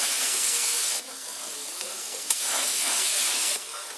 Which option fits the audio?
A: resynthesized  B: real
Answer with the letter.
A